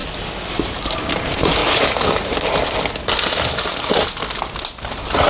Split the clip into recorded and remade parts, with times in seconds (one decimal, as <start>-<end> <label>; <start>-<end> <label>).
0.0-0.5 recorded; 0.5-1.6 remade; 1.6-4.8 recorded; 4.8-5.3 remade